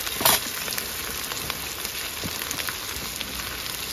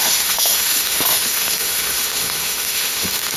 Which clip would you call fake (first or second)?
second